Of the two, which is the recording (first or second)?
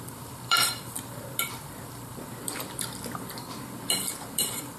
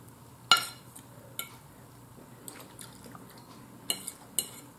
second